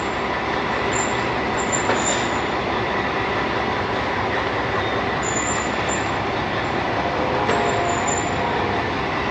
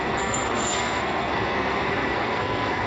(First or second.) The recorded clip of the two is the first